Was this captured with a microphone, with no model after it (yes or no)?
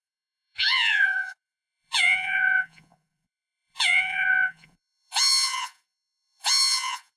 no